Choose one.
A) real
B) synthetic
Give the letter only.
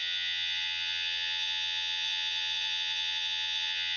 B